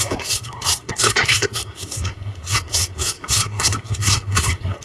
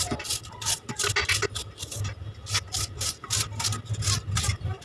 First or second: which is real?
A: second